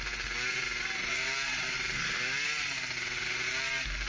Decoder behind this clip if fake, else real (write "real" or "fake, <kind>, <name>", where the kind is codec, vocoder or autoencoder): real